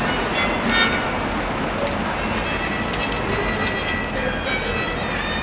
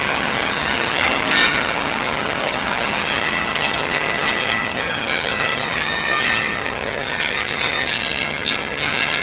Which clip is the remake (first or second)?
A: second